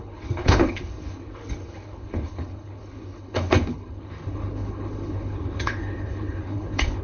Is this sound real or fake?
fake